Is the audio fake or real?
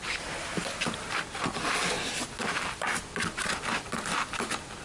real